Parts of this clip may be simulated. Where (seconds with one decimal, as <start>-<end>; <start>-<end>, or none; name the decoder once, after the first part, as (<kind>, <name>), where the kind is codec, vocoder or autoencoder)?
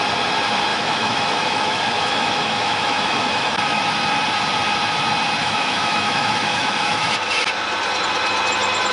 0.7-3.8 (autoencoder, DAC-VAE); 5.4-7.4